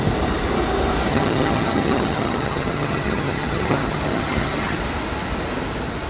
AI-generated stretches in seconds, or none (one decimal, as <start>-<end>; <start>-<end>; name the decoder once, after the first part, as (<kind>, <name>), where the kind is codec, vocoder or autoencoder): 1.1-4.8 (vocoder, HiFi-GAN)